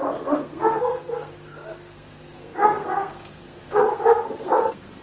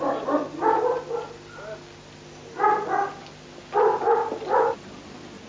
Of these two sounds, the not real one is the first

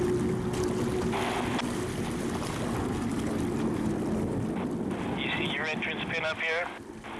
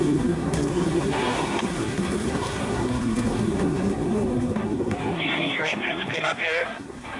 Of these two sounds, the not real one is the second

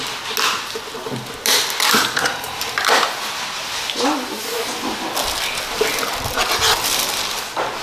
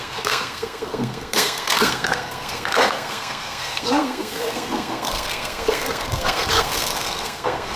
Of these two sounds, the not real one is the second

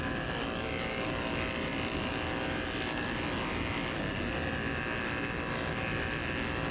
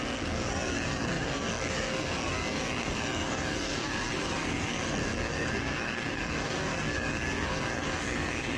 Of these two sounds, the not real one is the second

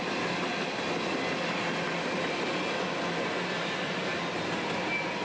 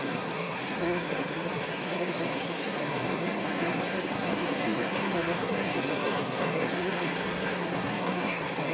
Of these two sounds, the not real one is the second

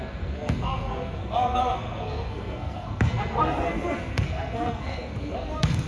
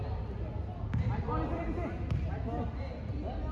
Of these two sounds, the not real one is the first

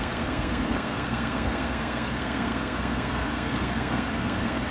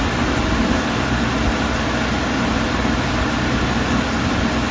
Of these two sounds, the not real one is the first